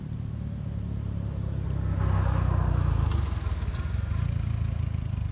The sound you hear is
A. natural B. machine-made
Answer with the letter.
A